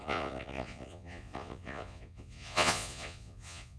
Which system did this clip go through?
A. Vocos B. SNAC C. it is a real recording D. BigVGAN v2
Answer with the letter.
A